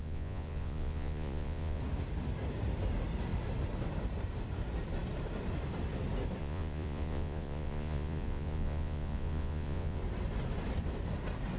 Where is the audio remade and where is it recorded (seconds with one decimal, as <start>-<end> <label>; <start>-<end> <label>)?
0.0-1.8 remade; 1.8-6.4 recorded; 6.4-10.0 remade; 10.0-11.6 recorded